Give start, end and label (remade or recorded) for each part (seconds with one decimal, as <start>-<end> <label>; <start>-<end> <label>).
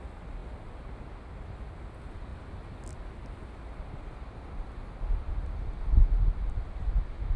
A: 0.0-7.4 recorded